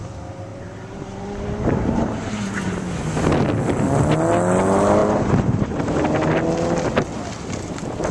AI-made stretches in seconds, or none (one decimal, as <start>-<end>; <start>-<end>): 0.5-2.9; 5.0-5.8